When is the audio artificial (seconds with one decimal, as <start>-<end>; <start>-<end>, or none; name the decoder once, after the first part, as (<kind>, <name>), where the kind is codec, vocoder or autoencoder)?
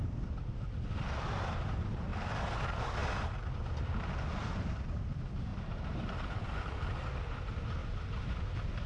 5.5-6.2 (vocoder, BigVGAN v2); 7.8-8.4